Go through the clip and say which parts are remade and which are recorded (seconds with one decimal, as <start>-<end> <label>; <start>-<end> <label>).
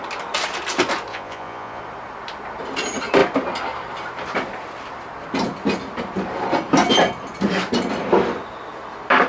0.0-1.1 recorded; 1.1-1.8 remade; 1.8-9.3 recorded